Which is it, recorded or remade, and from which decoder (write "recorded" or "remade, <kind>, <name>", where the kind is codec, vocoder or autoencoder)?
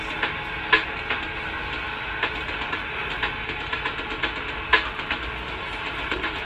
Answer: recorded